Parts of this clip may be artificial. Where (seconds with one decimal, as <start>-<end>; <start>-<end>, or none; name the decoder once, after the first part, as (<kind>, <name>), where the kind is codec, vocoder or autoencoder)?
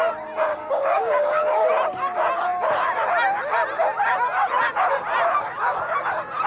0.5-1.7 (codec, DAC)